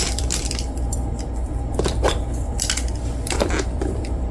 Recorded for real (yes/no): no